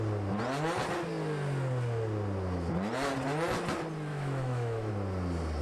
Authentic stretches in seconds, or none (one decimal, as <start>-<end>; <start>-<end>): 0.0-4.1; 4.9-5.6